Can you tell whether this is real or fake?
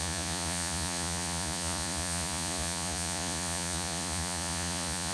fake